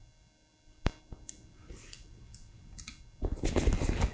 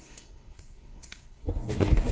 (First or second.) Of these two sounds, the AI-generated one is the second